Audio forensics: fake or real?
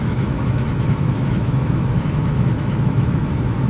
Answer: fake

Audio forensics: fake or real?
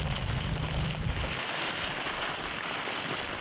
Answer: real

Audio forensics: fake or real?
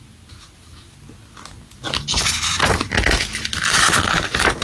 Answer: real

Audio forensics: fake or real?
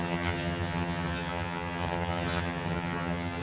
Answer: fake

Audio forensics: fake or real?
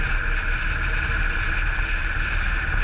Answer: real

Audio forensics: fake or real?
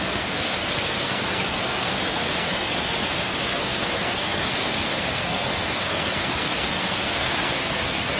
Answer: fake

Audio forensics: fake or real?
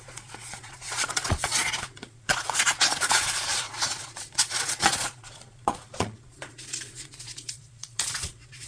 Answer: fake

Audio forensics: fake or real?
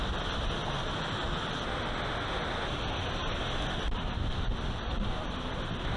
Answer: real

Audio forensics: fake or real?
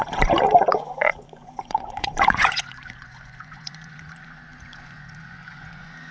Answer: fake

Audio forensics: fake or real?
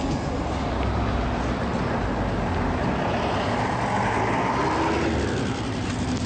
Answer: real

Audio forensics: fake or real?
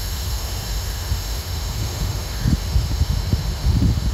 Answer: fake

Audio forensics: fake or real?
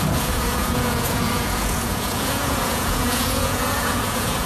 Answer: fake